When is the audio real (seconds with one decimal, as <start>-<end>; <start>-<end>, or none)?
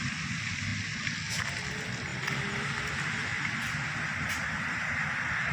0.7-1.3; 3.3-4.3